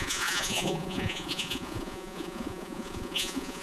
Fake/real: fake